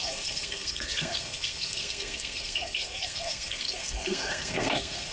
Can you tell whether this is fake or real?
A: fake